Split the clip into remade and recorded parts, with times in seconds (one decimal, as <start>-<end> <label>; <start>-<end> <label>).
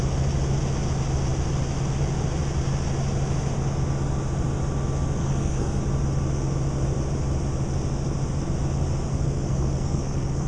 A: 0.0-5.2 recorded; 5.2-5.8 remade; 5.8-9.1 recorded; 9.1-10.5 remade